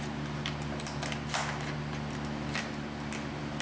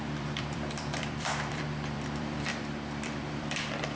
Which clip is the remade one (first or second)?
second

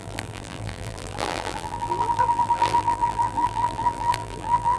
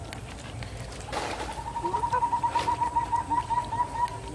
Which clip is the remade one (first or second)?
first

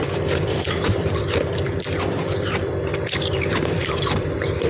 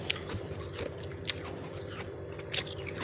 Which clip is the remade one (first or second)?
first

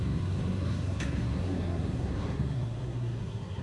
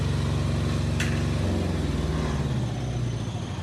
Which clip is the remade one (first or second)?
first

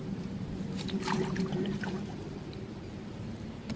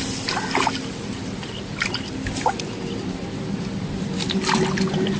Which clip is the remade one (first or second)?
first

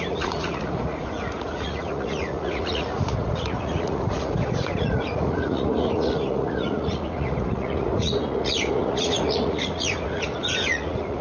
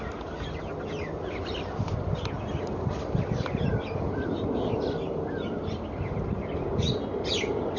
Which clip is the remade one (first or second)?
first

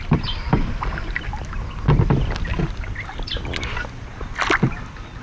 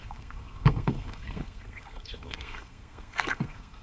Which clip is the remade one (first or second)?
second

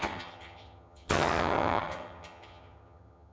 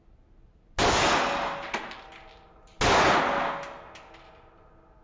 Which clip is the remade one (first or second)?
first